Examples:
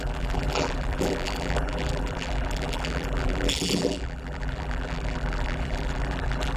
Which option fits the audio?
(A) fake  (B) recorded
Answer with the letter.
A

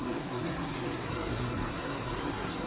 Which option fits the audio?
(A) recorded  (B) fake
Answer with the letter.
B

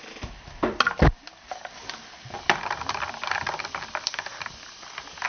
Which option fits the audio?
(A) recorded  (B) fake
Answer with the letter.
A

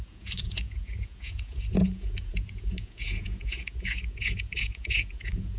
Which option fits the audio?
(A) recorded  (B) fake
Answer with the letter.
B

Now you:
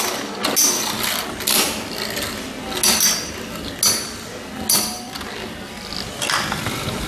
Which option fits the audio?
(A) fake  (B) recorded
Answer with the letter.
B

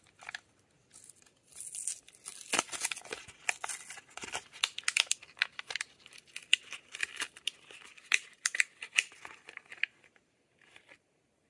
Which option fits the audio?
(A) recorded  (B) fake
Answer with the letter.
A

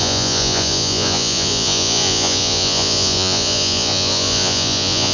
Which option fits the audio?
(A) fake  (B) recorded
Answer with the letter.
A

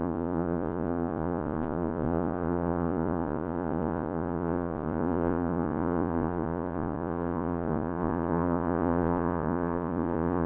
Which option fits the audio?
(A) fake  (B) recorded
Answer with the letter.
A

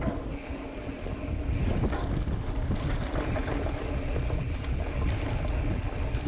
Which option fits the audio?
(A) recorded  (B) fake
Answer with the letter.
A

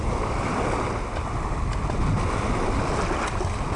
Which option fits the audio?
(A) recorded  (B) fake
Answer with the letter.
A